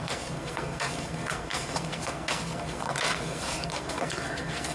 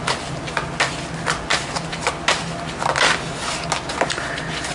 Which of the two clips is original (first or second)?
second